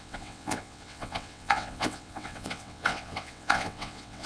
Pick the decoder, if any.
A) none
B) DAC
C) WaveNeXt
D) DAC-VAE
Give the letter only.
C